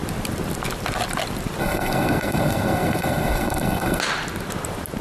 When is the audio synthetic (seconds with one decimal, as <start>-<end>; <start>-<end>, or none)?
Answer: 1.6-4.0